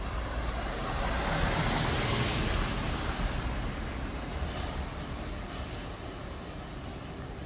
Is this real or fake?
real